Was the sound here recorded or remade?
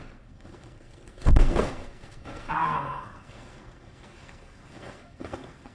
remade